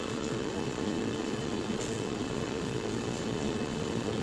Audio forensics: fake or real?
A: fake